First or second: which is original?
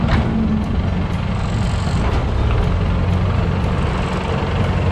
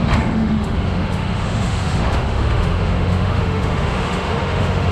first